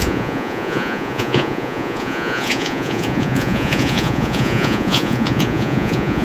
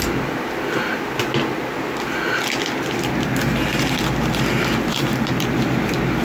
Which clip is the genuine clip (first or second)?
second